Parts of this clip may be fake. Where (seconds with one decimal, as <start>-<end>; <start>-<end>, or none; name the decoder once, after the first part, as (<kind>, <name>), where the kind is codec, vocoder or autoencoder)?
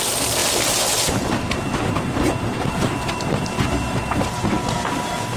none